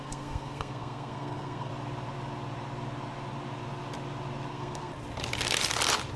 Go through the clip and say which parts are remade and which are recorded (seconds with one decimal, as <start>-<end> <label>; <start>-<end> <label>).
0.0-1.7 remade; 1.7-4.5 recorded; 4.5-4.9 remade; 4.9-6.2 recorded